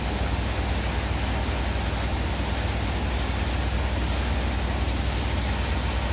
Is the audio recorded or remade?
recorded